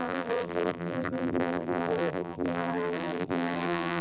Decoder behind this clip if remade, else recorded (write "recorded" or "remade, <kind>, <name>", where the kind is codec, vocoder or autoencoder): remade, vocoder, BigVGAN v2